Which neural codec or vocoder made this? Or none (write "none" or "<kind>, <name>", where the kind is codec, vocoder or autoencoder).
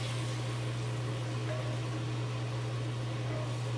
none